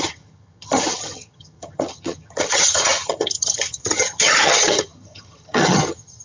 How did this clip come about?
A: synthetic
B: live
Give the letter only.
A